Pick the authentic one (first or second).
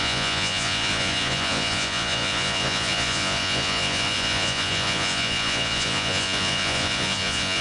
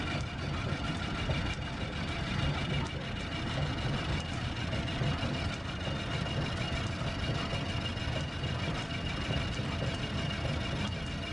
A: second